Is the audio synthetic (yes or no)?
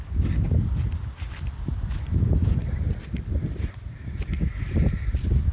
no